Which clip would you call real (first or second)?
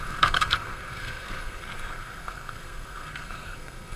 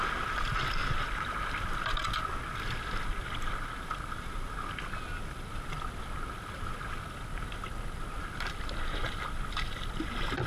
second